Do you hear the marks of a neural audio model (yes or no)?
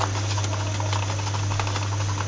no